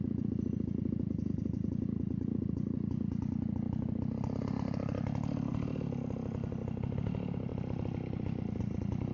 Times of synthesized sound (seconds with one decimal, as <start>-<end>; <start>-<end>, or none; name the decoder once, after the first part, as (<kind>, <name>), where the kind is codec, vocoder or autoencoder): none